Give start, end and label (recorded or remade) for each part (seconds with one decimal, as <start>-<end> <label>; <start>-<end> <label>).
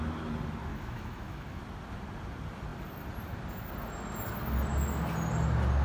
0.0-0.7 recorded; 0.7-1.6 remade; 1.6-5.8 recorded